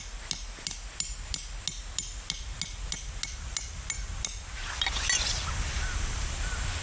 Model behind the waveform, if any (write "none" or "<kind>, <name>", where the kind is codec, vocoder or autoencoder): none